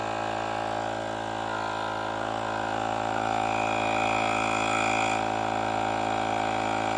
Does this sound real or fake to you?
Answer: real